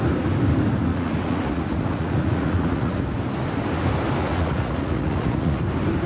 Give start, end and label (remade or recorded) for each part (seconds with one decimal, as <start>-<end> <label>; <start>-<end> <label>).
0.0-0.9 recorded; 0.9-3.0 remade; 3.0-4.2 recorded; 4.2-5.6 remade; 5.6-6.1 recorded